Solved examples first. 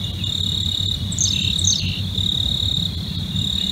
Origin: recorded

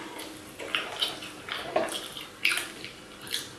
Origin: recorded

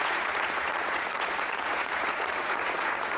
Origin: remade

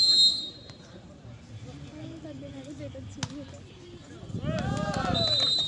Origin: recorded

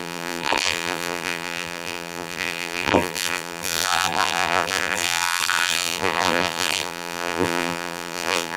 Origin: remade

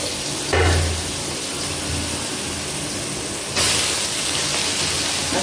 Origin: recorded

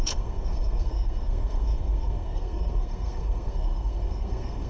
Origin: remade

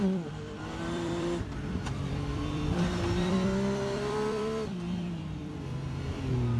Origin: remade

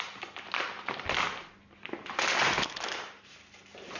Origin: recorded